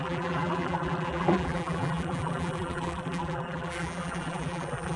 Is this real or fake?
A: fake